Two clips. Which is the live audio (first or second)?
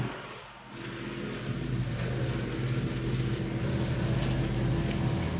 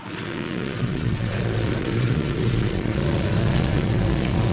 first